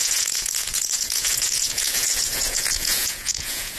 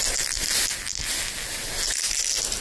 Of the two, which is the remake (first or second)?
first